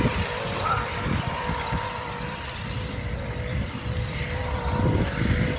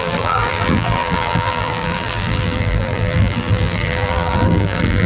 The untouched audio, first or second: first